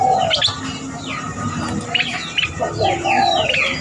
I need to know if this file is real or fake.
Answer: fake